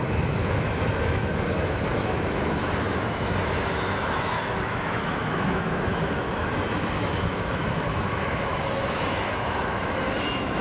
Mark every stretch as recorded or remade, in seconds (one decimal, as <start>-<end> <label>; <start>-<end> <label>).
0.0-10.6 remade